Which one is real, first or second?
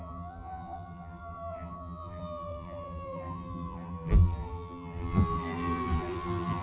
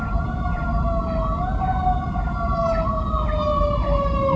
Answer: second